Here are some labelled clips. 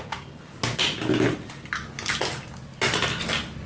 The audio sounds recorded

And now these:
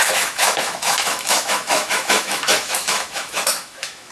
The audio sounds remade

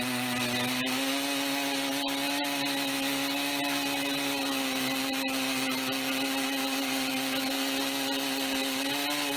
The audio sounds recorded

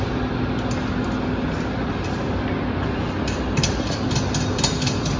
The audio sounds recorded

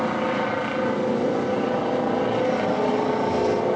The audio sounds recorded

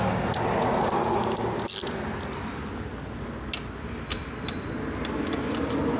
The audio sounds recorded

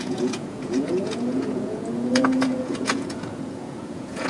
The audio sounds remade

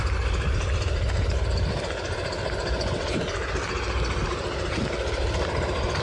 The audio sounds recorded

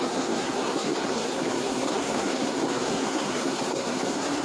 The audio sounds remade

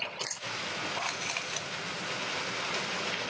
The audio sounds recorded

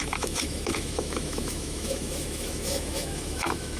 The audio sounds remade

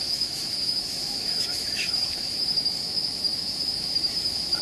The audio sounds remade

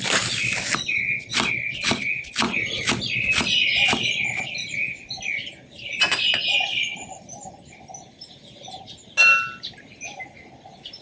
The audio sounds recorded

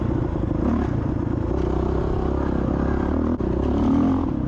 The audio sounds recorded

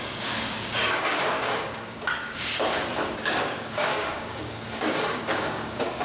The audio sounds remade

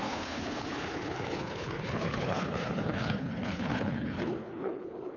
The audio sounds remade